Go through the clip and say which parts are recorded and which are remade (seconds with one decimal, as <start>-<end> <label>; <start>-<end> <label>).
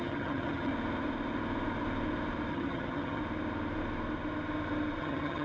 0.0-0.7 remade; 0.7-2.5 recorded; 2.5-3.2 remade; 3.2-5.0 recorded; 5.0-5.4 remade